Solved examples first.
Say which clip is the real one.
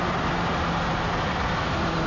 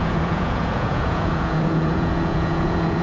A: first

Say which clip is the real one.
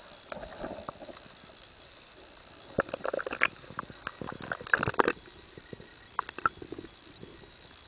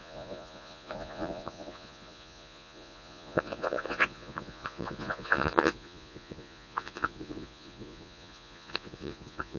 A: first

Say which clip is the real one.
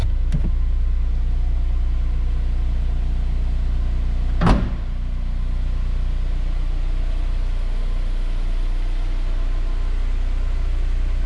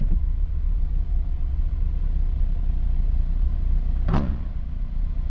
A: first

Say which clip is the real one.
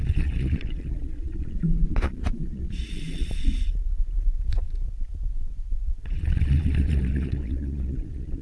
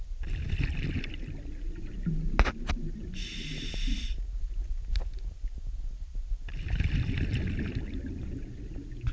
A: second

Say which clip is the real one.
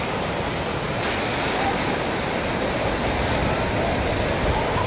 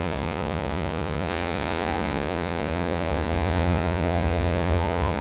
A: first